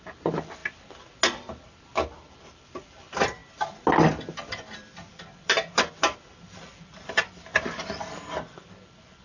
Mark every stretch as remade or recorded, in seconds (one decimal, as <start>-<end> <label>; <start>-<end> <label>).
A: 0.0-0.6 remade; 0.6-1.6 recorded; 1.6-3.4 remade; 3.4-5.1 recorded; 5.1-9.2 remade